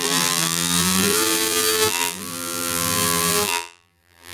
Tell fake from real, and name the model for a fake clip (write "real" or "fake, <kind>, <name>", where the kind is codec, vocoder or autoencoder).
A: fake, vocoder, BigVGAN v2